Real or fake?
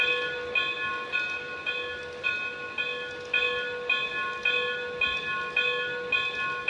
real